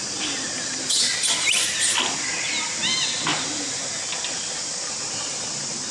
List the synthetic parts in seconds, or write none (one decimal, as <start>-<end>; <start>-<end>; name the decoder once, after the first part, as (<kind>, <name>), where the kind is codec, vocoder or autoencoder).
none